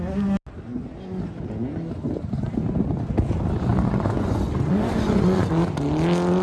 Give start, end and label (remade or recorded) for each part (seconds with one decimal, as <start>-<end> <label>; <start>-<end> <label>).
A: 0.0-3.7 recorded; 3.7-5.5 remade; 5.5-6.4 recorded